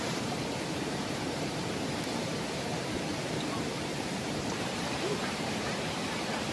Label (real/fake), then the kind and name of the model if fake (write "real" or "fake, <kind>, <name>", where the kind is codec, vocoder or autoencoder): fake, vocoder, BigVGAN v2